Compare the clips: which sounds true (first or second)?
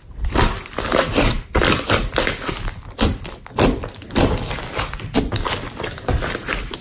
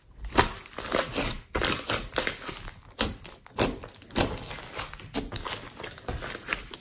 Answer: second